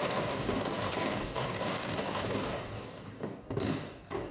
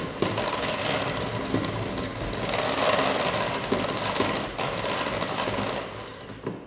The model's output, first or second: first